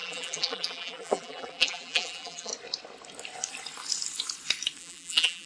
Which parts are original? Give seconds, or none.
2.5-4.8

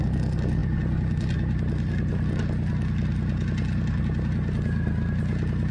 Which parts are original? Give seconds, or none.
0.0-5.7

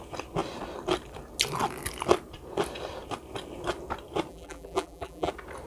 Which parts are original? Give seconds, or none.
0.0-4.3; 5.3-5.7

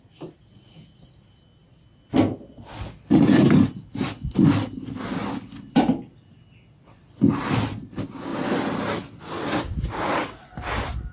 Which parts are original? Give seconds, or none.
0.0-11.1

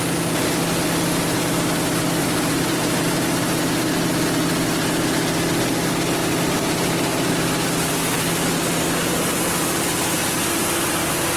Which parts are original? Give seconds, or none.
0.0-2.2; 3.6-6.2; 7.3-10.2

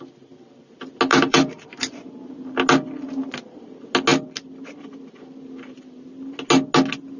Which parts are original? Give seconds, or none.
0.0-1.1; 2.0-7.2

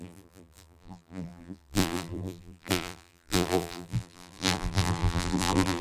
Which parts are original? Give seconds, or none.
none